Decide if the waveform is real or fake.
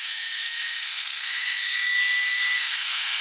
fake